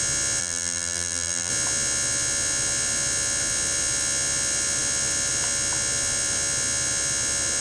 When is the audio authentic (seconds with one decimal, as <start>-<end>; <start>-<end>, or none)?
0.0-0.4; 1.5-7.6

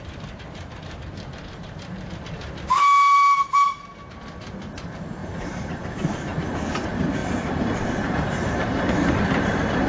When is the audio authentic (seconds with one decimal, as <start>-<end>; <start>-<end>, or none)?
0.0-5.2; 5.9-7.2